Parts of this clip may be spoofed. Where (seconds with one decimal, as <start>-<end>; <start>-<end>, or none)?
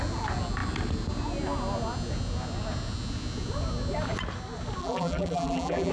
4.8-5.9